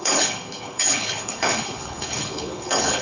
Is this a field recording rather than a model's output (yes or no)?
no